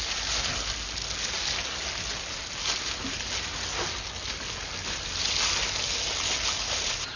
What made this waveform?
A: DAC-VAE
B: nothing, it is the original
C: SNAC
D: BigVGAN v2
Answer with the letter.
B